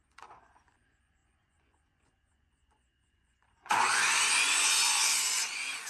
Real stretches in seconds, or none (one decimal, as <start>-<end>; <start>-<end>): none